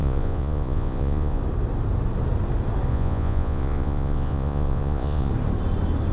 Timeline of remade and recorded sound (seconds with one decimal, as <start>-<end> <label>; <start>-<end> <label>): 0.0-1.4 remade; 1.4-2.9 recorded; 2.9-5.3 remade; 5.3-6.1 recorded